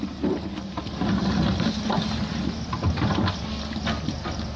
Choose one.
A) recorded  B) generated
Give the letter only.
A